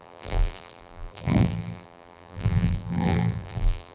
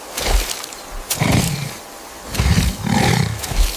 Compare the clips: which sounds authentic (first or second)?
second